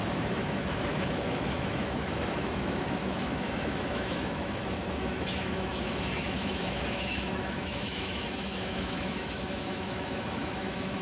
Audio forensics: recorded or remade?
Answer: remade